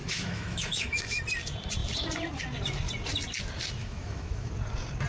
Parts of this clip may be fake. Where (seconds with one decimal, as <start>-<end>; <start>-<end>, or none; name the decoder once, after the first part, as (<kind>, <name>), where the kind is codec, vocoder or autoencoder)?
0.0-1.2 (autoencoder, DAC-VAE); 3.8-4.5